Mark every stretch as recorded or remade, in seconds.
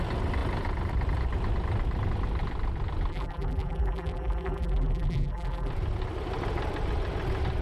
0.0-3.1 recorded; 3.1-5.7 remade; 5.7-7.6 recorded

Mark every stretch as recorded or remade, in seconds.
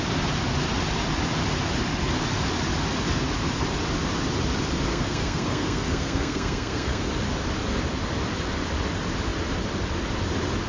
0.0-4.9 recorded; 4.9-7.1 remade; 7.1-10.7 recorded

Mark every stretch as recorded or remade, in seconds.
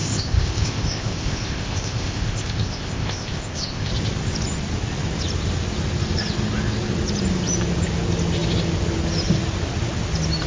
0.0-3.9 remade; 3.9-10.5 recorded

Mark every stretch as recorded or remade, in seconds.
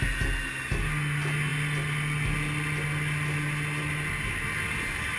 0.0-5.2 recorded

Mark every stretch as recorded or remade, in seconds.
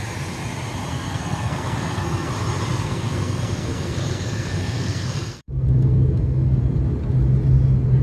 0.0-0.9 recorded; 0.9-2.3 remade; 2.3-2.7 recorded; 2.7-6.6 remade; 6.6-8.0 recorded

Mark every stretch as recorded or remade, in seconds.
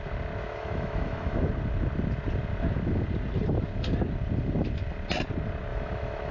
0.0-0.4 recorded; 0.4-1.5 remade; 1.5-5.7 recorded; 5.7-6.3 remade